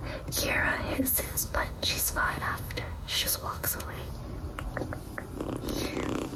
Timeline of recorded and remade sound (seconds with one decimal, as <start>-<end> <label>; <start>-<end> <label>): 0.0-0.9 recorded; 0.9-4.1 remade; 4.1-6.4 recorded